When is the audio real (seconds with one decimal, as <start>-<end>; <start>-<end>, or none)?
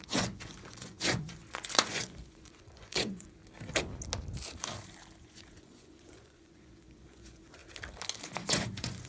3.4-5.2; 7.6-8.2